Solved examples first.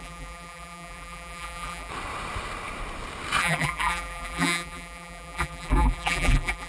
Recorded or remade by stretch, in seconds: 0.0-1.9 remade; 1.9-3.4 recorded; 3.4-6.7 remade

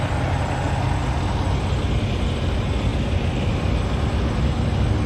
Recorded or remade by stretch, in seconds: 0.0-5.1 recorded